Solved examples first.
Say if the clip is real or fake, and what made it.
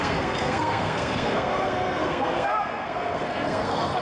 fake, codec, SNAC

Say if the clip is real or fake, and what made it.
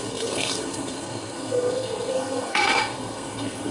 fake, codec, SNAC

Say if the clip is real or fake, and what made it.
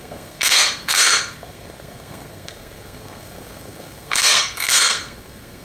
fake, codec, SNAC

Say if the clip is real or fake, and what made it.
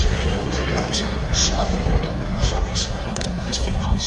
fake, codec, SNAC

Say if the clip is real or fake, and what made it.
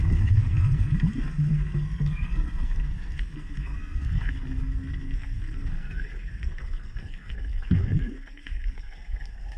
fake, codec, SNAC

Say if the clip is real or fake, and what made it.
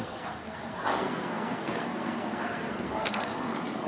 fake, codec, SNAC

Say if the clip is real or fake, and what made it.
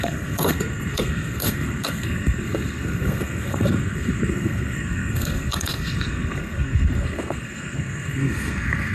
fake, codec, SNAC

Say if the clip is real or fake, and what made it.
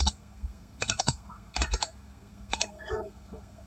fake, codec, SNAC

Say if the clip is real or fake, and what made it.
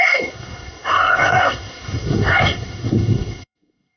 fake, codec, SNAC